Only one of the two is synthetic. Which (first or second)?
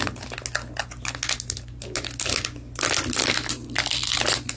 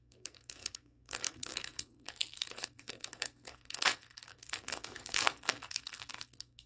second